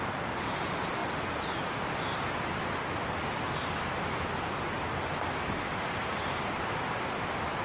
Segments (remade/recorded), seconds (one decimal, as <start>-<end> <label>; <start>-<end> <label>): 0.0-7.6 recorded